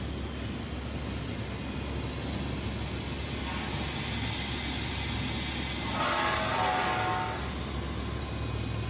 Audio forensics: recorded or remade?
recorded